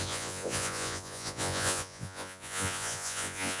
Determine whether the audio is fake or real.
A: fake